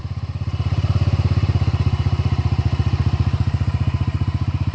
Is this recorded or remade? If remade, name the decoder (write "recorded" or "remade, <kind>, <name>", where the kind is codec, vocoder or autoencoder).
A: remade, vocoder, BigVGAN v2